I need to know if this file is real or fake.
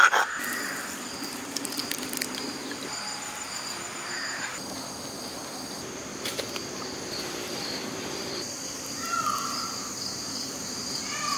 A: fake